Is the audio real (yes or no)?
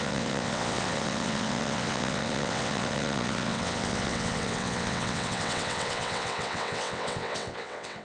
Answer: no